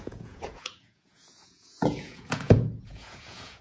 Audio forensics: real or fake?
fake